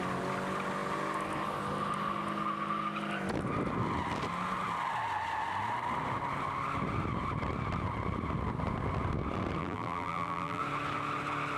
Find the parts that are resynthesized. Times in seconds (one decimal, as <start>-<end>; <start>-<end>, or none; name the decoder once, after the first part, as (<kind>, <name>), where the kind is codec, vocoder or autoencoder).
9.6-10.6 (vocoder, BigVGAN v2)